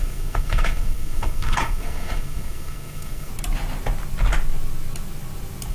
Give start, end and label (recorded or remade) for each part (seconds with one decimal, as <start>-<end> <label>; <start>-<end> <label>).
0.0-3.3 remade; 3.3-5.7 recorded